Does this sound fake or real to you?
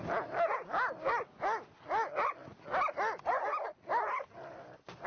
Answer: real